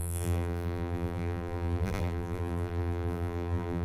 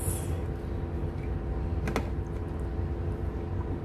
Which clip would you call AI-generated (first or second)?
first